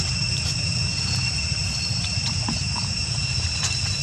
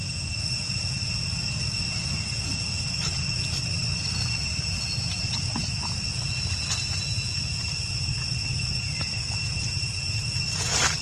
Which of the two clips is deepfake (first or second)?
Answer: first